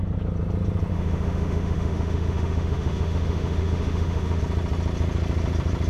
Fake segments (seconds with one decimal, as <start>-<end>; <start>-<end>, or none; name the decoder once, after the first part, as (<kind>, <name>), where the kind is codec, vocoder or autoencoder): 0.9-4.4 (autoencoder, DAC-VAE)